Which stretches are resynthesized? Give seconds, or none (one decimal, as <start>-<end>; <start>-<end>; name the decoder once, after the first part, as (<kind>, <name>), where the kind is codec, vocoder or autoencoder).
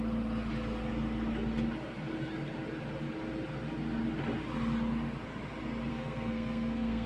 5.9-7.1 (codec, SNAC)